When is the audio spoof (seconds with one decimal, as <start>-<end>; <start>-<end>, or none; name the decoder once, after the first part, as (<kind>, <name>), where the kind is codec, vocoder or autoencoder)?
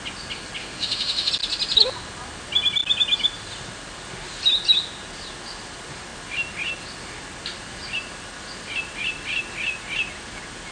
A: 0.6-1.3 (autoencoder, DAC-VAE)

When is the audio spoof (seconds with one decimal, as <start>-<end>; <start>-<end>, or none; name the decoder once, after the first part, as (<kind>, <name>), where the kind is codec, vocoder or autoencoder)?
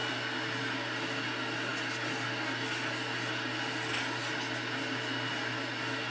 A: none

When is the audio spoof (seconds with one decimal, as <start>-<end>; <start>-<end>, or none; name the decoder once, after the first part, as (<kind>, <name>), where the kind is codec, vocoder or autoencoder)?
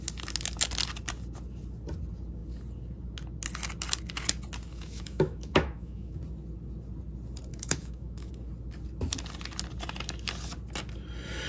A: 4.7-6.2 (autoencoder, DAC-VAE); 7.5-8.3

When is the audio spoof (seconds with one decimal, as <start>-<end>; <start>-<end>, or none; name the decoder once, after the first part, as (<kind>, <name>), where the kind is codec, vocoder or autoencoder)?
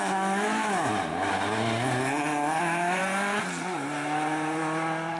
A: 0.0-0.9 (autoencoder, DAC-VAE); 2.6-3.0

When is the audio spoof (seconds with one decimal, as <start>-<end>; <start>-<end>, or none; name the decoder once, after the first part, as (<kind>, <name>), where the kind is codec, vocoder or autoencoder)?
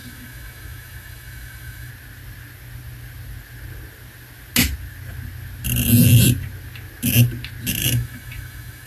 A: 0.0-1.9 (autoencoder, DAC-VAE); 7.8-8.9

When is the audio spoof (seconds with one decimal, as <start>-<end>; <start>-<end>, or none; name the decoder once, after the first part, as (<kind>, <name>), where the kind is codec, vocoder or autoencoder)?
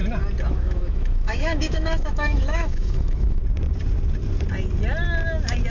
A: 0.5-3.4 (autoencoder, DAC-VAE)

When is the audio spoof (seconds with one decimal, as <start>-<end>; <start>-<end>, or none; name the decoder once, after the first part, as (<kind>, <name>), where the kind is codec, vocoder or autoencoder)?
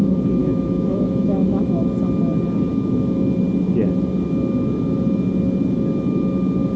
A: 0.4-1.8 (autoencoder, DAC-VAE)